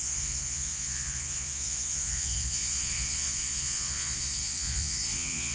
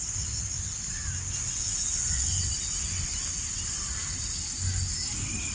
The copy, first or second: first